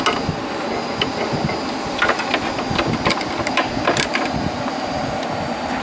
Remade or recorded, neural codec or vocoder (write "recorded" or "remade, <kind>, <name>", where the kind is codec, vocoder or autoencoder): recorded